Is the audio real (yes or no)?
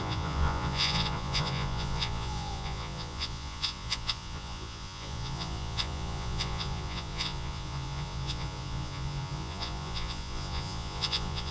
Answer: no